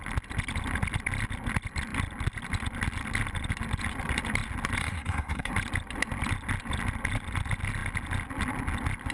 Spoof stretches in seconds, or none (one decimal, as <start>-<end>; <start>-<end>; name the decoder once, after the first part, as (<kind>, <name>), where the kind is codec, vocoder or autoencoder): 4.8-5.5 (codec, SNAC)